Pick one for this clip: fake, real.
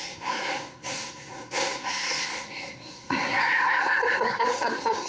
fake